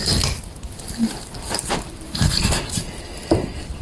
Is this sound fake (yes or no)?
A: no